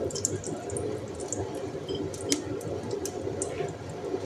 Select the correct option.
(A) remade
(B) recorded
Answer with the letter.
B